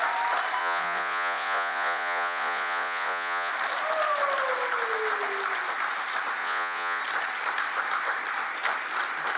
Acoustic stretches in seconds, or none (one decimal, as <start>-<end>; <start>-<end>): 0.0-0.6; 3.5-6.4; 7.0-9.4